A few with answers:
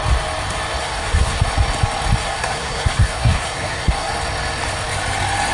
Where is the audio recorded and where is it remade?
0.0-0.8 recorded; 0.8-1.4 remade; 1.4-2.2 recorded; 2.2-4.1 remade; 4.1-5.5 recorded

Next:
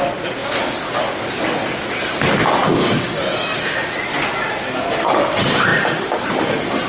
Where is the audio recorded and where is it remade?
0.0-5.7 recorded; 5.7-6.4 remade; 6.4-6.9 recorded